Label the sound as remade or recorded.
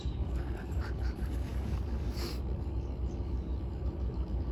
remade